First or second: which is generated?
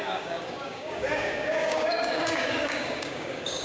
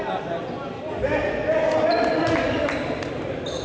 first